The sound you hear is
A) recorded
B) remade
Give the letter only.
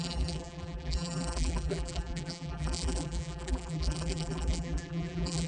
B